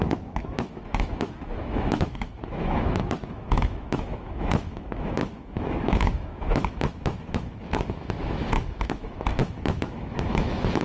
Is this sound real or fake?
fake